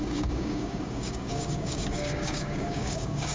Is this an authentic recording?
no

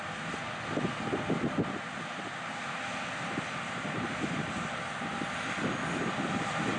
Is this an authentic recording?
yes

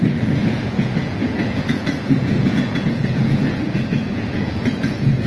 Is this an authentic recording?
no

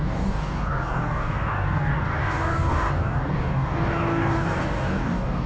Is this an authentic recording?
no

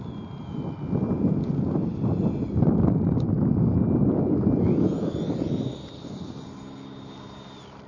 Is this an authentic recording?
yes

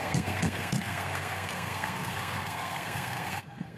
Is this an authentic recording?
no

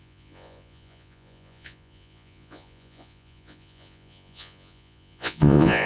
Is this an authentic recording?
no